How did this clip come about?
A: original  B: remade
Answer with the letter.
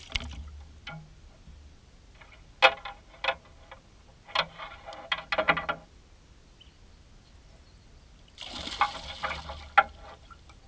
A